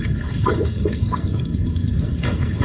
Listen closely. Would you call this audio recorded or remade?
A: remade